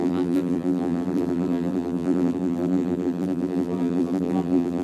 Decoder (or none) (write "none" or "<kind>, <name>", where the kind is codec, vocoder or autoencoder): vocoder, BigVGAN v2